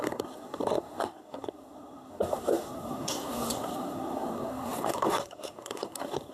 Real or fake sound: fake